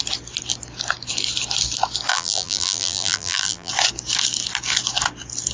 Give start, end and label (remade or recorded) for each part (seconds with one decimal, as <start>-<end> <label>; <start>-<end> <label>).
0.0-2.1 recorded; 2.1-3.7 remade; 3.7-5.5 recorded